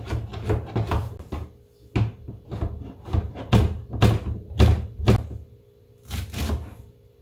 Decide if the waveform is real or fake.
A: real